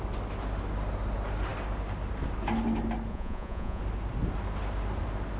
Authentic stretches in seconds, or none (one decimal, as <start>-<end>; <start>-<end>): 0.0-3.1; 3.8-5.4